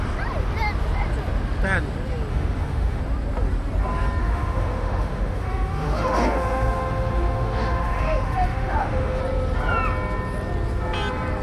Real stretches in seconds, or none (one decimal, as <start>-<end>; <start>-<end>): 0.0-2.3; 3.0-4.2; 9.2-11.4